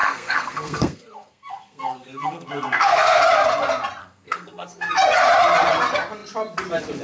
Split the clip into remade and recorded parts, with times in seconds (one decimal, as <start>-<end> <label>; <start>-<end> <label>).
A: 0.0-3.2 remade; 3.2-4.0 recorded; 4.0-4.9 remade; 4.9-7.0 recorded